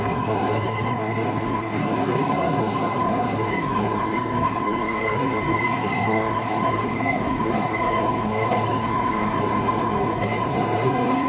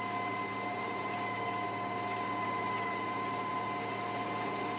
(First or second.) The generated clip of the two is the first